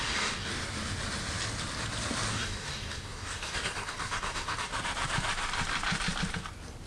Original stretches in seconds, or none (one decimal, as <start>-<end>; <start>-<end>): 0.5-2.3; 4.7-6.9